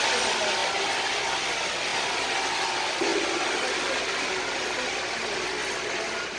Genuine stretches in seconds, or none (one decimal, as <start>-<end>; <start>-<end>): 0.0-6.4